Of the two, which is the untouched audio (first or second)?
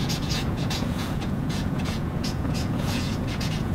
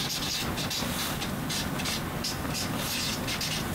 second